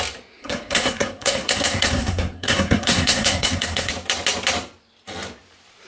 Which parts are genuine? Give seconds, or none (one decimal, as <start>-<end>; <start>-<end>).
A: 0.0-0.4; 3.9-5.9